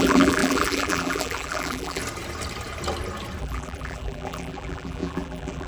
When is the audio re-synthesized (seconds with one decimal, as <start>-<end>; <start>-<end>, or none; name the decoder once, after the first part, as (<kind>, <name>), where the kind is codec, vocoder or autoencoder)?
0.0-2.0 (vocoder, BigVGAN v2); 3.4-5.7